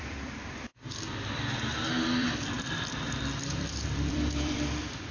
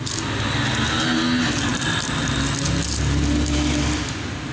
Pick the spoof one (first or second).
first